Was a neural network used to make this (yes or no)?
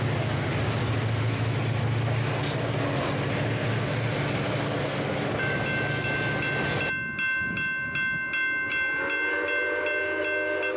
no